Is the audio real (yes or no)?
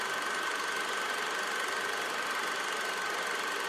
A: yes